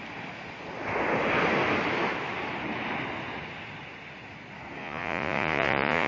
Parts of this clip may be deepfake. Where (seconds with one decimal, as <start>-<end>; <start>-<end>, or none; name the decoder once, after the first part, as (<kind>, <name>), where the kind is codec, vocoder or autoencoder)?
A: 4.8-6.1 (vocoder, Vocos)